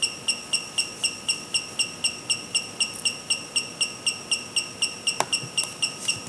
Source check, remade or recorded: recorded